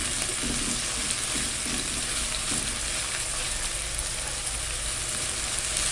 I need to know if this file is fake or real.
real